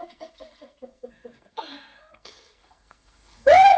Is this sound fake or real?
fake